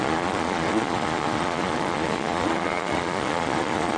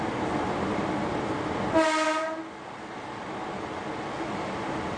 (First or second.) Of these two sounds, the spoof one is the first